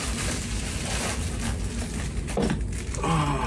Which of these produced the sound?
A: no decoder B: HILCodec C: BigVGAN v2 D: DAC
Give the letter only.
C